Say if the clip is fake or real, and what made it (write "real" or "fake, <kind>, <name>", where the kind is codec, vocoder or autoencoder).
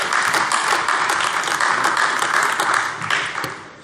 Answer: real